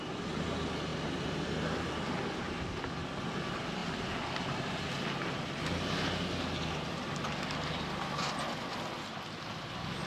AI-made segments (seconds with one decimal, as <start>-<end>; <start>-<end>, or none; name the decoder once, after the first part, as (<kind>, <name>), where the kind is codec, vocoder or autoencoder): none